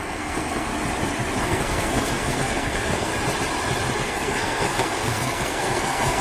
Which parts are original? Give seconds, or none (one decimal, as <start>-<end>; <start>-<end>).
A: 0.7-1.4; 3.1-4.0